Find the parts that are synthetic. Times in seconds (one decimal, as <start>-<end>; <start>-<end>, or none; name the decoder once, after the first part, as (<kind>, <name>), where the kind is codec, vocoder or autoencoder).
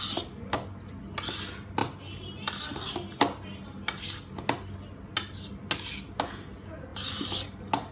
none